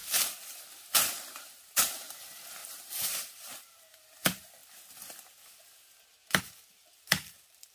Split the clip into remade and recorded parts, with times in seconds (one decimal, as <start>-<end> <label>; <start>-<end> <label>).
0.0-2.2 recorded; 2.2-4.6 remade; 4.6-6.4 recorded; 6.4-7.7 remade